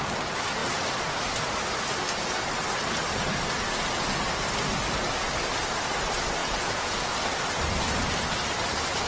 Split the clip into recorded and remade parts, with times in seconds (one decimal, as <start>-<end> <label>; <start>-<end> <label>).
0.0-6.4 recorded; 6.4-7.1 remade; 7.1-9.1 recorded